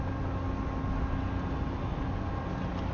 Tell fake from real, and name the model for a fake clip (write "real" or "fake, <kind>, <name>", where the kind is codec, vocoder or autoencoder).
real